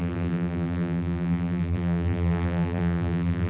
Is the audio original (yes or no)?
no